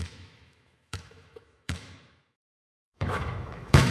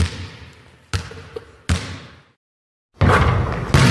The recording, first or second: second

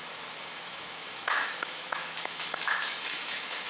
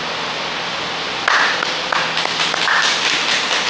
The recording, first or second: second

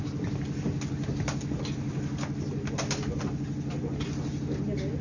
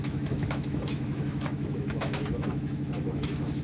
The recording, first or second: first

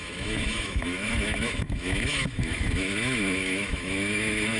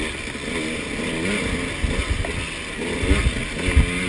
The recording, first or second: second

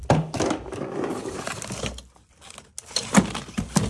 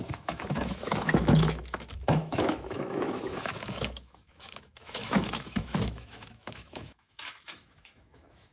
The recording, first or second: first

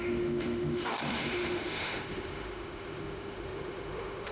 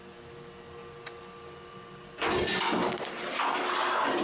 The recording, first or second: second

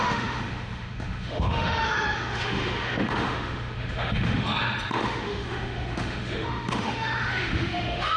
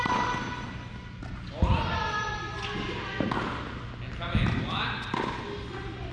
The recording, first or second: second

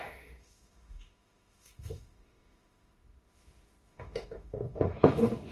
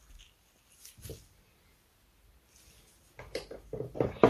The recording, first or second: second